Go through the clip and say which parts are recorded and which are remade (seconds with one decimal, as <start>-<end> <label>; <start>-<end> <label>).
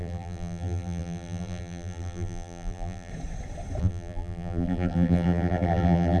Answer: 0.0-3.1 remade; 3.1-3.8 recorded; 3.8-6.2 remade